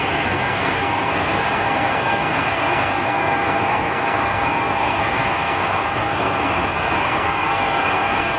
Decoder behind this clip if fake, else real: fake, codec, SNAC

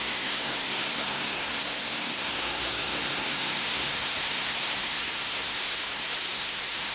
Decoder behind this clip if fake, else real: fake, codec, SNAC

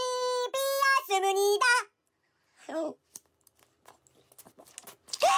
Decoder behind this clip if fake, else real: real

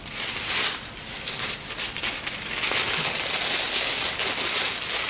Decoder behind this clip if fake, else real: real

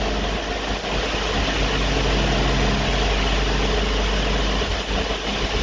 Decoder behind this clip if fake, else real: real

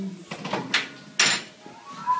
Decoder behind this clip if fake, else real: real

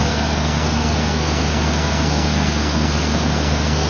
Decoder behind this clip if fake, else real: fake, codec, SNAC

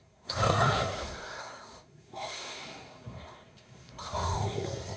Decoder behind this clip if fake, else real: fake, codec, SNAC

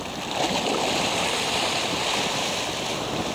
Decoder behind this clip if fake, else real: real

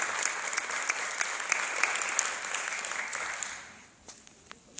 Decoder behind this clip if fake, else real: real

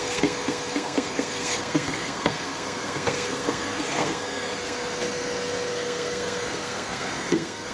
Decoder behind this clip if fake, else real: fake, codec, SNAC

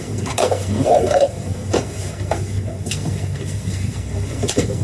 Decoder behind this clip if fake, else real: fake, codec, SNAC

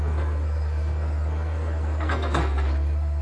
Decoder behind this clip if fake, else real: fake, codec, SNAC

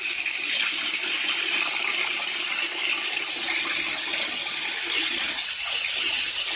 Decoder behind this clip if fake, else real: real